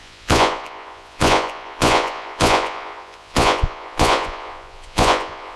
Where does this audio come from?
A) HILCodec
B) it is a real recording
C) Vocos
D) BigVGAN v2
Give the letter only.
C